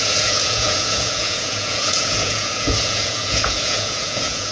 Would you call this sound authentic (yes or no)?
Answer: no